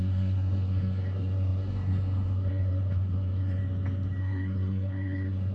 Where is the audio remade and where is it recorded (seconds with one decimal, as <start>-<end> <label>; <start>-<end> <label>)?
0.0-3.6 remade; 3.6-4.2 recorded; 4.2-5.5 remade